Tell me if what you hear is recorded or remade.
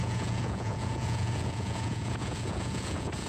remade